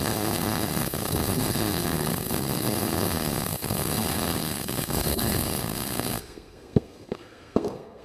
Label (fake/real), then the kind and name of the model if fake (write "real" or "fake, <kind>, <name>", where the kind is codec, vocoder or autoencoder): fake, codec, SNAC